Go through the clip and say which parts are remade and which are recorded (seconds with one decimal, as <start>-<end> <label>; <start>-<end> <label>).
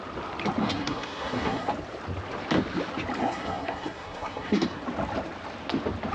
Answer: 0.0-0.6 recorded; 0.6-1.7 remade; 1.7-3.2 recorded; 3.2-4.8 remade; 4.8-6.1 recorded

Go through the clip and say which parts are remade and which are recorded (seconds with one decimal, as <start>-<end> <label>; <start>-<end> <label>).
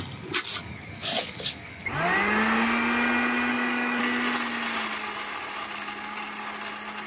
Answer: 0.0-0.6 recorded; 0.6-1.8 remade; 1.8-3.5 recorded; 3.5-4.0 remade; 4.0-7.1 recorded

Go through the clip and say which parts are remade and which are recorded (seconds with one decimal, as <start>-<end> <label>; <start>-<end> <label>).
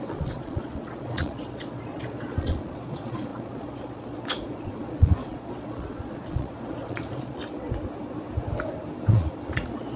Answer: 0.0-7.4 remade; 7.4-9.1 recorded; 9.1-10.0 remade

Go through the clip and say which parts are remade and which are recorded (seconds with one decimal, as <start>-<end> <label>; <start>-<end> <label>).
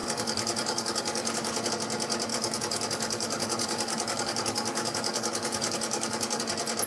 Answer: 0.0-1.7 remade; 1.7-2.3 recorded; 2.3-6.4 remade; 6.4-6.9 recorded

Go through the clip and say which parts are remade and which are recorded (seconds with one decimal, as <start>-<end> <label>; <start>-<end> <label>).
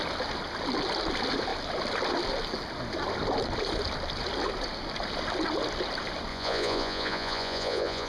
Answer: 0.0-6.3 recorded; 6.3-8.1 remade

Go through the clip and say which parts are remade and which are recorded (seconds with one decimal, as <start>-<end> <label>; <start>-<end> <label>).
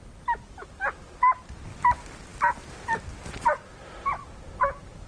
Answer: 0.0-5.1 recorded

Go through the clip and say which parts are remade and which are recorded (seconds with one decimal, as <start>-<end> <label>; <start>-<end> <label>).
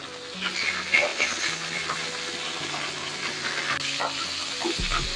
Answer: 0.0-5.2 recorded